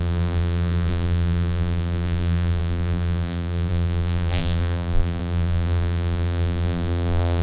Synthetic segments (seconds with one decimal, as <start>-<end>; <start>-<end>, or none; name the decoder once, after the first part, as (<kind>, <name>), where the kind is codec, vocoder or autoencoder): 0.0-7.4 (vocoder, BigVGAN v2)